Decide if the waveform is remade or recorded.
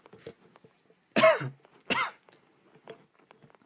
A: recorded